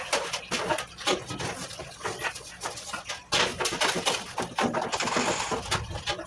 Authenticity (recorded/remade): recorded